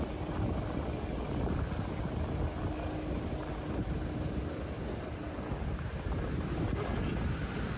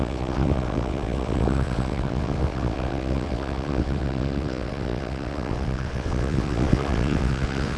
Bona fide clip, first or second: first